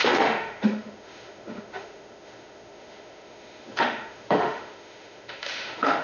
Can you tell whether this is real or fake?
fake